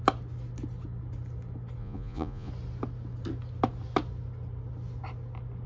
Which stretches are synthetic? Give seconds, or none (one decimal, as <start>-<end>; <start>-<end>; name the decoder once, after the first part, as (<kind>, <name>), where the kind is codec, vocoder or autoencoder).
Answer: 1.8-2.5 (vocoder, Vocos)